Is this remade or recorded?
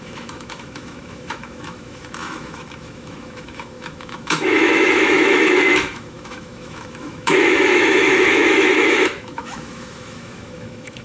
remade